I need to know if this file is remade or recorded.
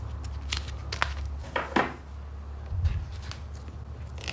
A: recorded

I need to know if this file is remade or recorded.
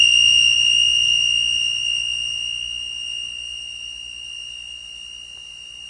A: recorded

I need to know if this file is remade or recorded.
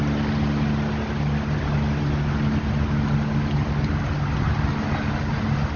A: recorded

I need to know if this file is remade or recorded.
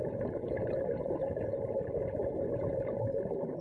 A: recorded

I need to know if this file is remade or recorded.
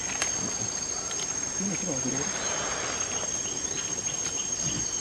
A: recorded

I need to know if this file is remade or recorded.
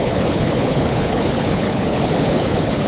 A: remade